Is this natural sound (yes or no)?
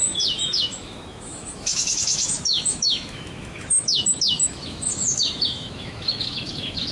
no